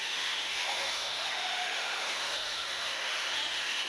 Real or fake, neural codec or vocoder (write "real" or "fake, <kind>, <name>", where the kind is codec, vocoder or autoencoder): fake, autoencoder, DAC-VAE